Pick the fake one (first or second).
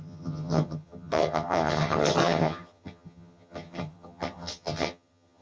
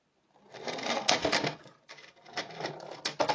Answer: first